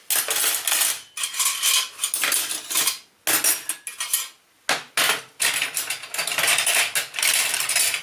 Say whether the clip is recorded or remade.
recorded